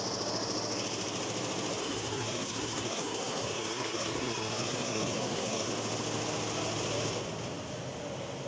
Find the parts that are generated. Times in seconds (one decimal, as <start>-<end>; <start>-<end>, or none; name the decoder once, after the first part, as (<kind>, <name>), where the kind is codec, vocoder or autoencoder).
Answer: 1.8-5.7 (codec, SNAC)